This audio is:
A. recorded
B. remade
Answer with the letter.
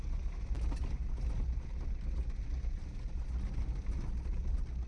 A